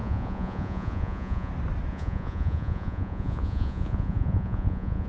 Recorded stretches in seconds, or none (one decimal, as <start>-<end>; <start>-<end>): 1.5-1.9